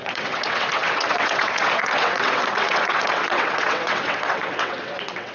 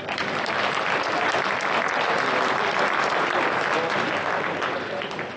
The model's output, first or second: first